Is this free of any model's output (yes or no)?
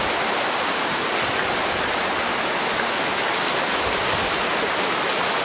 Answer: yes